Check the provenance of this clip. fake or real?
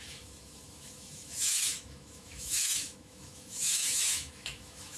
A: fake